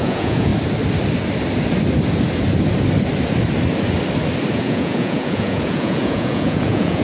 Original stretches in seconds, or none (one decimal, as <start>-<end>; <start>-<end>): 0.5-4.5